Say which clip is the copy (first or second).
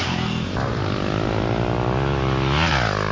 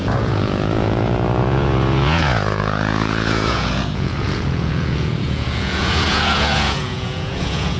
second